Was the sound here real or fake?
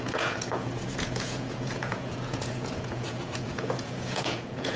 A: fake